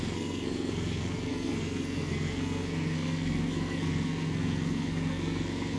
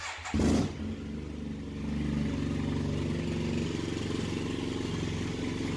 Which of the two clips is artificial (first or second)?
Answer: first